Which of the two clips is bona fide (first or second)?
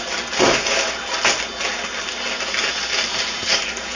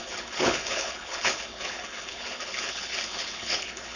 first